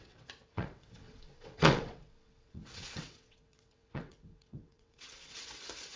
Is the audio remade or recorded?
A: remade